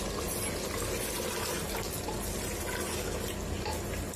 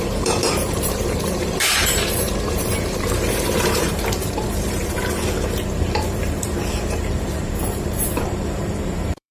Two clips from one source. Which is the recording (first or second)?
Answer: first